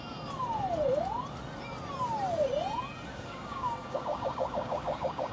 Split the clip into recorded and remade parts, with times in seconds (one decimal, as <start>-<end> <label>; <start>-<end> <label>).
0.0-3.1 recorded; 3.1-5.3 remade